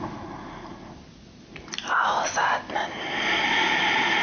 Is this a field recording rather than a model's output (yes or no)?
yes